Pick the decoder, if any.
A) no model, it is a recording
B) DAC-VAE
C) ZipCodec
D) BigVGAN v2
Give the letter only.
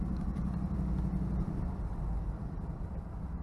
D